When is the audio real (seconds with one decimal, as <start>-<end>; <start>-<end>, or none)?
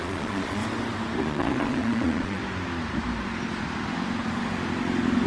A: 0.6-1.2; 2.4-5.3